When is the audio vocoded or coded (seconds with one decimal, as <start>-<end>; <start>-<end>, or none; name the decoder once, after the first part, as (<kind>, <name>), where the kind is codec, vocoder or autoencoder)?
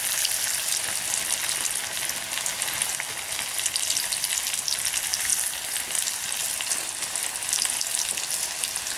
none